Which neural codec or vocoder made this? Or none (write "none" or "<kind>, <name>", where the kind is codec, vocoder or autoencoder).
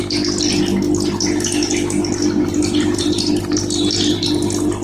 none